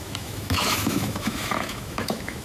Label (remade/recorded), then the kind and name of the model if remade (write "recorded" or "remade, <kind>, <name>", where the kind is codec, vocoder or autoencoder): remade, autoencoder, DAC-VAE